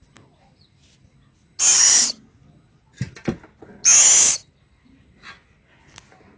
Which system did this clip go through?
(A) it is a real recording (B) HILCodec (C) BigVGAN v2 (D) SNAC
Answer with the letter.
A